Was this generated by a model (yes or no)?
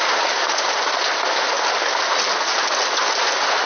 no